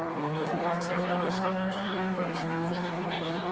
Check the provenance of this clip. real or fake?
fake